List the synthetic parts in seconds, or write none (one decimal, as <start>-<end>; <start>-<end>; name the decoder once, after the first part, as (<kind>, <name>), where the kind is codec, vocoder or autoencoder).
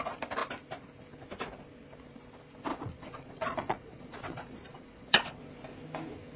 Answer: 2.7-5.4 (vocoder, Vocos)